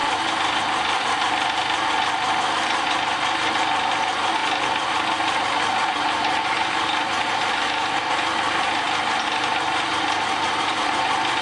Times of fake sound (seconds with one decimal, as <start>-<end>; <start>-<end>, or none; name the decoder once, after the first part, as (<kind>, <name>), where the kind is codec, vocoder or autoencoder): 0.6-4.4 (vocoder, BigVGAN v2); 8.1-11.4

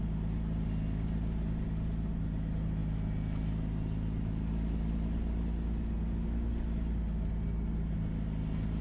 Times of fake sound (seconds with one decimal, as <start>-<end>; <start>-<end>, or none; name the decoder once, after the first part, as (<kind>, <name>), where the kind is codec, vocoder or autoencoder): none

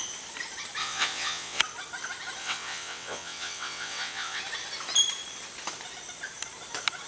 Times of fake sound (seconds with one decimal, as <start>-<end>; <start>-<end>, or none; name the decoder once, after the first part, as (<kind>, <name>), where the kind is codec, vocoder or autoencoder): 0.8-1.6 (vocoder, WaveNeXt); 2.4-4.4

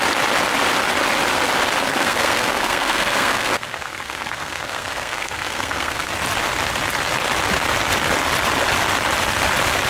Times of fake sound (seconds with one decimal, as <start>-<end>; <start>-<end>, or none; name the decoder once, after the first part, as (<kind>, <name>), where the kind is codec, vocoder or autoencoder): 1.9-6.1 (codec, SNAC)